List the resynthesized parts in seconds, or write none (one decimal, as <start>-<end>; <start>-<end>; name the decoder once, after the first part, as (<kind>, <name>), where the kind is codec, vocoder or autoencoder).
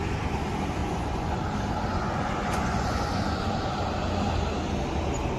0.8-1.4 (vocoder, Vocos); 1.9-3.6